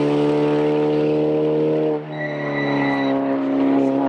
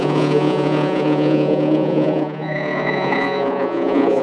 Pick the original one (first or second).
first